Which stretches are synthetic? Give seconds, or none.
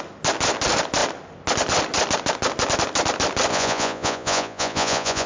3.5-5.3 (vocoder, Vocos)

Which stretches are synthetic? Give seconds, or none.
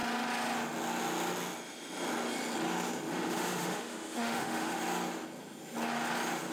3.1-4.8 (autoencoder, DAC-VAE)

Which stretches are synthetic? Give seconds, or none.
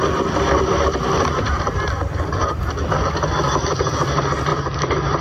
none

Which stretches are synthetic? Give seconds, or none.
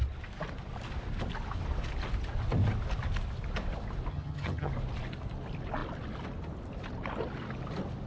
4.1-4.7 (vocoder, HiFi-GAN)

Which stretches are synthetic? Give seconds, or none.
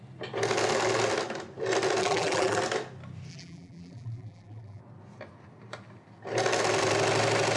2.0-2.6 (vocoder, BigVGAN v2); 3.3-4.8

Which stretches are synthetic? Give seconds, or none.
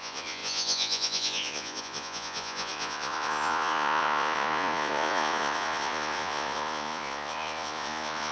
0.0-8.3 (vocoder, Vocos)